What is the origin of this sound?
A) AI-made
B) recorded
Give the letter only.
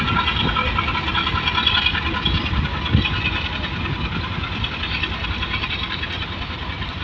B